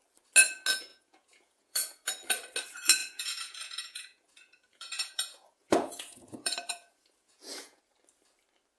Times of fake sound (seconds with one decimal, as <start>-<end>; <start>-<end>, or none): 0.9-2.1; 3.0-7.8